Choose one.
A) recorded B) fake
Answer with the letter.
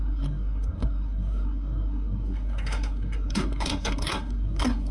B